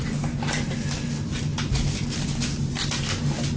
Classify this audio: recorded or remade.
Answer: recorded